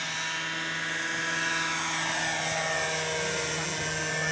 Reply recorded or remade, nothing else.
recorded